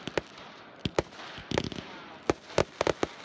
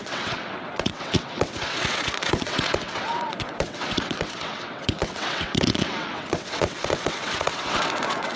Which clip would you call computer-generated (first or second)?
second